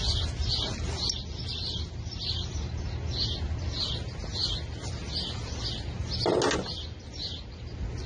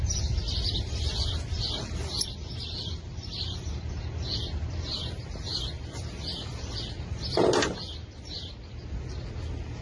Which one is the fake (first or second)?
second